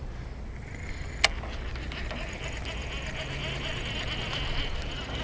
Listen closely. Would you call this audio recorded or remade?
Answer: recorded